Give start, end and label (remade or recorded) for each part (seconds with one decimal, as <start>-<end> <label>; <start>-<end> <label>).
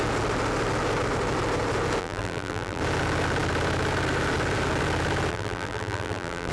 0.0-2.0 recorded; 2.0-2.8 remade; 2.8-5.3 recorded; 5.3-6.5 remade